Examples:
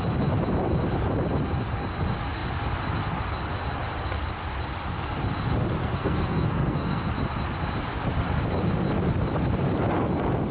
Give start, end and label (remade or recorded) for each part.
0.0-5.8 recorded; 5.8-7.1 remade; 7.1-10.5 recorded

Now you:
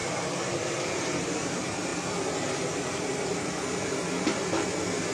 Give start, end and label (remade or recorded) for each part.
0.0-0.9 recorded; 0.9-1.9 remade; 1.9-5.1 recorded

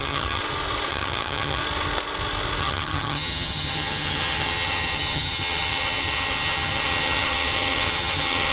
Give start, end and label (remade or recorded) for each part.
0.0-0.4 remade; 0.4-0.9 recorded; 0.9-1.6 remade; 1.6-2.6 recorded; 2.6-8.5 remade